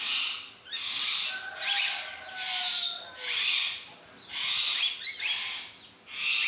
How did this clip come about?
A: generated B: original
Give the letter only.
B